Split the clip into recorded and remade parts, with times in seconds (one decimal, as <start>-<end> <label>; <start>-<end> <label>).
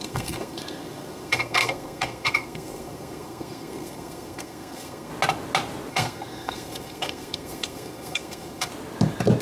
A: 0.0-5.1 remade; 5.1-5.9 recorded; 5.9-8.7 remade; 8.7-9.4 recorded